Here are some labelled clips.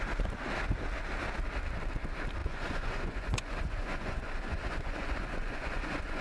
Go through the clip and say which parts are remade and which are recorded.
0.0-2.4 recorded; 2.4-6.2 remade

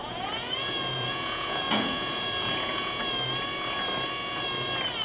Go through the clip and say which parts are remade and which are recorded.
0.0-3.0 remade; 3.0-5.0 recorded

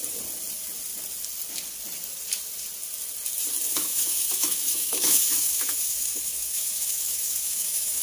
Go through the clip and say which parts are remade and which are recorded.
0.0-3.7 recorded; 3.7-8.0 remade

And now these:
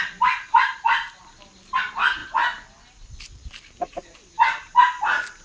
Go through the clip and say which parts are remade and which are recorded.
0.0-5.4 recorded